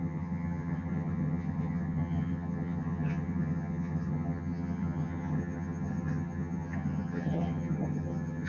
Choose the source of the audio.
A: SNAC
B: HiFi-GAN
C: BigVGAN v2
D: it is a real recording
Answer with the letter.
B